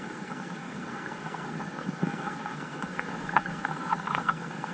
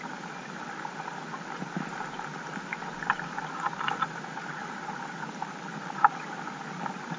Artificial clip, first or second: first